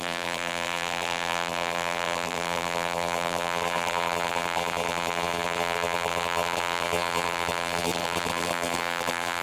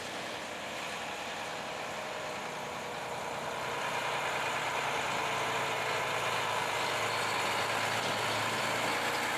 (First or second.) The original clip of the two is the second